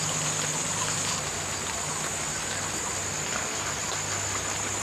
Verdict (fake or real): real